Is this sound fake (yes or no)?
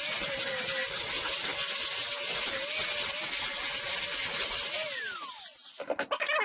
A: no